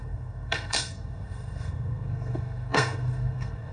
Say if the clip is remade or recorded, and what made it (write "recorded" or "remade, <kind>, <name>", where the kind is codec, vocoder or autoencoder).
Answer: remade, codec, SNAC